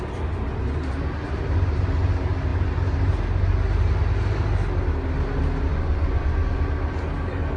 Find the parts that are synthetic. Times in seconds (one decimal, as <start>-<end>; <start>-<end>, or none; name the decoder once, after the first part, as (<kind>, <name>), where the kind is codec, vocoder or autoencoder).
5.7-6.6 (vocoder, Vocos)